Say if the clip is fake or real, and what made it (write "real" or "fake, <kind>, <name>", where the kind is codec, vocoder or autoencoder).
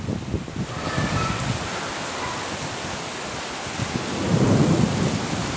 real